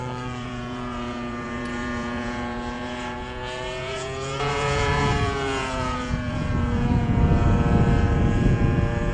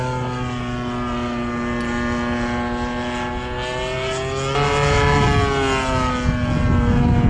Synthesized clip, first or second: first